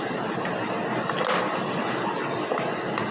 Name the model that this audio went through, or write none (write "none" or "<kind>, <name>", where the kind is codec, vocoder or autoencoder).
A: none